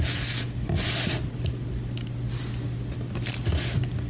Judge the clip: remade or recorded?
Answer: recorded